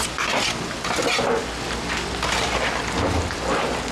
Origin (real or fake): real